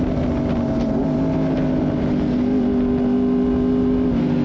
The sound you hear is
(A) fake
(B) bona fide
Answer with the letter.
B